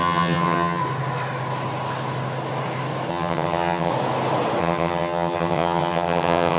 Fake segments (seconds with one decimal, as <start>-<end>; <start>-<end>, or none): 0.0-0.8; 3.1-3.9; 4.6-6.6